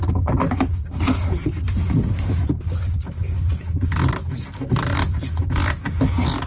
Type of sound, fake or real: real